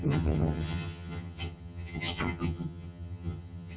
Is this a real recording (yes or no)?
no